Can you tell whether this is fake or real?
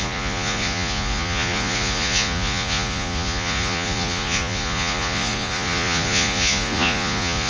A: fake